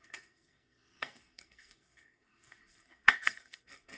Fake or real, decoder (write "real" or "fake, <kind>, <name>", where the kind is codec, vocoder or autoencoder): fake, codec, SNAC